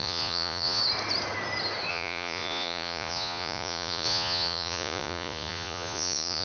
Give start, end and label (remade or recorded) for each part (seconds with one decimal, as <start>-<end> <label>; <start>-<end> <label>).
0.0-0.8 remade; 0.8-1.9 recorded; 1.9-6.4 remade